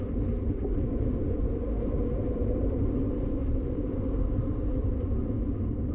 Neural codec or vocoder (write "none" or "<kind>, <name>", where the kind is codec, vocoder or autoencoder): vocoder, BigVGAN v2